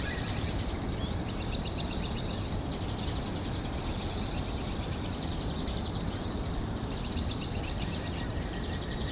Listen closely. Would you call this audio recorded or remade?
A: remade